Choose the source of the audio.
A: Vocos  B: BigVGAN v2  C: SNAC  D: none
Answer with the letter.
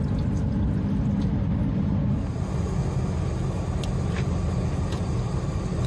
D